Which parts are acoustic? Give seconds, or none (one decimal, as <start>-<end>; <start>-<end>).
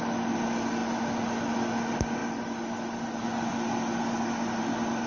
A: 0.0-5.1